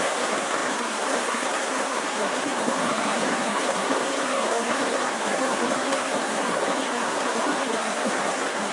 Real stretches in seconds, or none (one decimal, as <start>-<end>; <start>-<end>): none

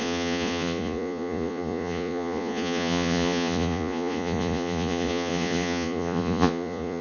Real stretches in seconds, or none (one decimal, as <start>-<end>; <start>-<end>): none

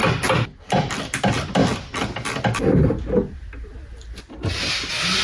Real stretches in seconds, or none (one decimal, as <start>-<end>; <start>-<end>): 0.0-5.2